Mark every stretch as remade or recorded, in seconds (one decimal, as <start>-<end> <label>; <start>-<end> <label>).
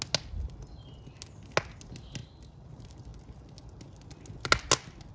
0.0-5.1 recorded